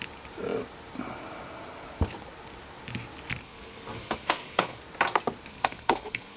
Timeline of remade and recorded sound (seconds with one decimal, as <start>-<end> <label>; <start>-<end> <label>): 0.0-3.4 recorded; 3.4-4.8 remade; 4.8-5.5 recorded; 5.5-6.4 remade